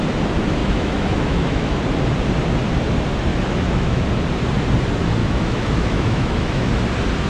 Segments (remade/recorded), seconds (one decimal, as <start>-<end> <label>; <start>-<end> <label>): 0.0-0.6 recorded; 0.6-1.8 remade; 1.8-3.3 recorded; 3.3-4.0 remade; 4.0-5.2 recorded; 5.2-6.7 remade; 6.7-7.3 recorded